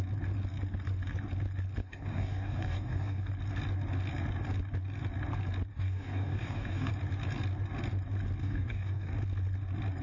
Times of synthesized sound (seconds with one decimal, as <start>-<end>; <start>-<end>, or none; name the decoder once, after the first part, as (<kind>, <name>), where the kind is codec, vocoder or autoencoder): 1.8-3.3 (codec, DAC); 5.7-6.9; 8.4-9.1

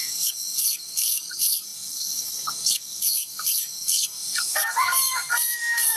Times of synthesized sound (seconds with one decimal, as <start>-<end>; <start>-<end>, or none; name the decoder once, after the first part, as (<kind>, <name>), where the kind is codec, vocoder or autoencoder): 0.0-6.0 (codec, SNAC)

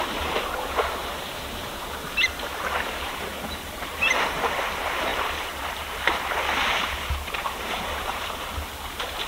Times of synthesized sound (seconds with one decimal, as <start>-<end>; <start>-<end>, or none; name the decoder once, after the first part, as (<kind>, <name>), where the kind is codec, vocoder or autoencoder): 0.0-5.1 (vocoder, BigVGAN v2); 6.6-9.3

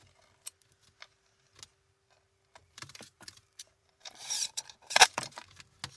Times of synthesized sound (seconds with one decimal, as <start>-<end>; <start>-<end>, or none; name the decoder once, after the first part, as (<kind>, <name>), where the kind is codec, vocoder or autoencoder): 2.6-5.3 (vocoder, BigVGAN v2)

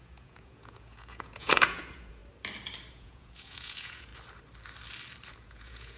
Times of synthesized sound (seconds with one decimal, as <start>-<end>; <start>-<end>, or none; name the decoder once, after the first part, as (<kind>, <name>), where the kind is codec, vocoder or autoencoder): 0.0-2.2 (vocoder, Vocos); 2.9-4.1; 5.3-6.0

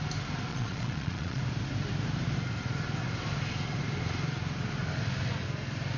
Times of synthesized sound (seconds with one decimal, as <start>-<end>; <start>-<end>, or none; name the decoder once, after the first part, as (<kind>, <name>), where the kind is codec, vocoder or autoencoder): 0.5-1.4 (vocoder, Vocos)

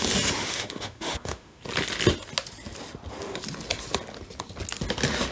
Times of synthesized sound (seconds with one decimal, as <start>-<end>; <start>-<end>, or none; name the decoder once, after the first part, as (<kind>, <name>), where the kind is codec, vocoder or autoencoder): 0.4-1.6 (autoencoder, DAC-VAE)

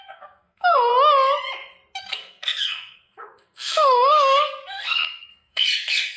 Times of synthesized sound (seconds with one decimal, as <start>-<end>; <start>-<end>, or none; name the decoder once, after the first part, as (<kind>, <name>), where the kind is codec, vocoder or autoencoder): 0.0-0.9 (codec, SNAC); 2.0-6.2